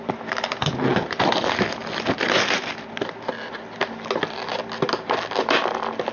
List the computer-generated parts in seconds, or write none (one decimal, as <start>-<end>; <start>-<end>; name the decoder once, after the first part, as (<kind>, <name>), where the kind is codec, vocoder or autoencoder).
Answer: none